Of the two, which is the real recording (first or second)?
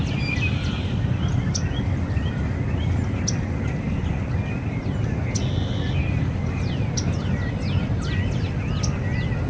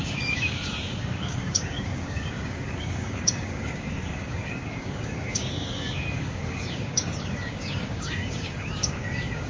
first